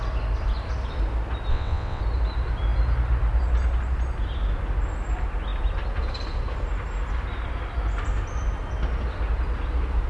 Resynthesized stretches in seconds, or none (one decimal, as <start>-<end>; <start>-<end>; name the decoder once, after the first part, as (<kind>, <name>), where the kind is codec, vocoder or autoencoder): 1.5-2.0 (vocoder, WaveNeXt)

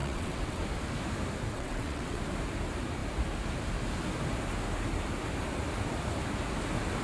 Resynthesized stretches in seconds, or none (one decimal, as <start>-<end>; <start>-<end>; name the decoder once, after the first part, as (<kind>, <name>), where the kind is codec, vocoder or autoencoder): 0.0-0.6 (vocoder, WaveNeXt); 1.5-2.2

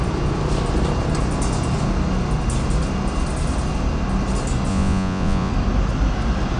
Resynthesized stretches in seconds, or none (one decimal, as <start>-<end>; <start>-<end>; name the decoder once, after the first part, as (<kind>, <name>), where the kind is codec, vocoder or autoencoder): 4.7-5.5 (vocoder, Vocos)

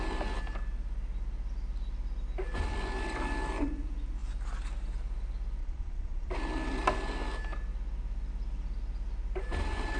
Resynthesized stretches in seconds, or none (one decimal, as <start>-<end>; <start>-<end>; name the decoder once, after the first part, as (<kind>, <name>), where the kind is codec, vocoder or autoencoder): 5.6-6.3 (vocoder, Vocos)

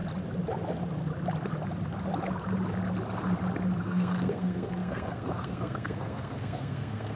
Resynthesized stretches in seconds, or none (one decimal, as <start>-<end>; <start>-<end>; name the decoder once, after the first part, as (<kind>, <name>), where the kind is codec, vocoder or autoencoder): 3.8-7.2 (codec, SNAC)

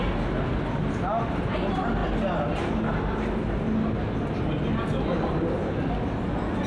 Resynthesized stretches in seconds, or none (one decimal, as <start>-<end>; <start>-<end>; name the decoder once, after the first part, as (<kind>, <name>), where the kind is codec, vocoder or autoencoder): none